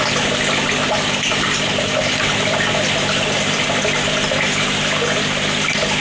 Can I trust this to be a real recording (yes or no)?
yes